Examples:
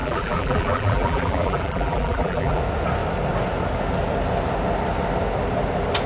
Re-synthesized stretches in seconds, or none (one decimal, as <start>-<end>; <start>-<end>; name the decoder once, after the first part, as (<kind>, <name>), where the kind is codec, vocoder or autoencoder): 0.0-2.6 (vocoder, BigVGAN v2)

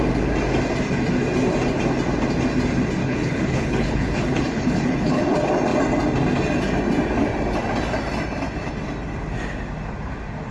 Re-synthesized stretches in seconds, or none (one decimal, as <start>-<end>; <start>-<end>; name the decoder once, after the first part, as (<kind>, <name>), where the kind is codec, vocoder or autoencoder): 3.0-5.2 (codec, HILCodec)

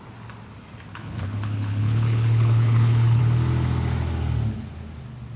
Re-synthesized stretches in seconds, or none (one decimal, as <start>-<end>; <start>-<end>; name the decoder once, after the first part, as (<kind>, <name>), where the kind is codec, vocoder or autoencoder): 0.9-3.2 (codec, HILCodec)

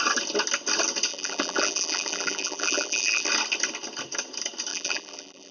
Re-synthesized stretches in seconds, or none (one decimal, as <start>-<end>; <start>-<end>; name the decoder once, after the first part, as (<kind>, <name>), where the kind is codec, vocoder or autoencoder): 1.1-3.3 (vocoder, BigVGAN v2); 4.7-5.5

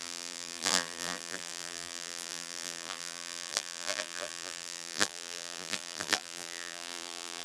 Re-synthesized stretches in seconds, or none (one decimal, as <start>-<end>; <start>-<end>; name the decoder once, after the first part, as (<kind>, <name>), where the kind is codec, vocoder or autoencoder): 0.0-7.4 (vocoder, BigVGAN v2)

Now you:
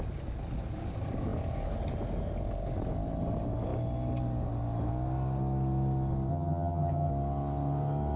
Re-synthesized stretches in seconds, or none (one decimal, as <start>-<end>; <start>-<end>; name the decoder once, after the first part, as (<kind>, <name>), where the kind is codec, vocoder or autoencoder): 6.3-7.1 (vocoder, HiFi-GAN)

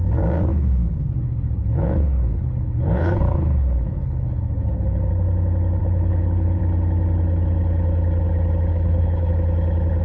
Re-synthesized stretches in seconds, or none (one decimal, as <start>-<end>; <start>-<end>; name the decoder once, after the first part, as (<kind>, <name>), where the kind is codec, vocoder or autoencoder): 0.5-5.1 (codec, HILCodec); 5.8-6.6; 8.7-9.3